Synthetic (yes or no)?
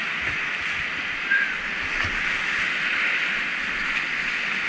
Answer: no